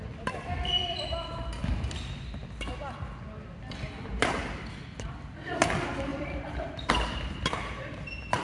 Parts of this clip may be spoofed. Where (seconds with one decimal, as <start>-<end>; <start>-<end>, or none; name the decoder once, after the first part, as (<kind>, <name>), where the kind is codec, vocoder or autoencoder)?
6.1-6.9 (vocoder, BigVGAN v2)